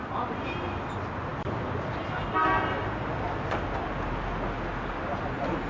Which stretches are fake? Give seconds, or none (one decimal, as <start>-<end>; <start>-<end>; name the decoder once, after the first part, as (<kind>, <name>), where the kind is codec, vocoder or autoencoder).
none